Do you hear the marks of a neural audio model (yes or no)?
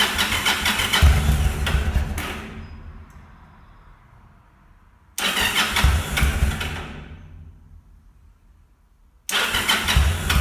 no